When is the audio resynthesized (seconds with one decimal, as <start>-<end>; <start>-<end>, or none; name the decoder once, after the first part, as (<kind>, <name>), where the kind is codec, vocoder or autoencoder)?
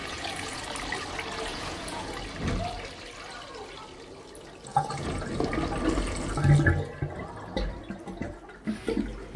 0.0-0.6 (vocoder, Vocos); 1.5-2.1; 4.7-5.3